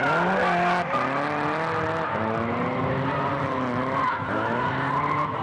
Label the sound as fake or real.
real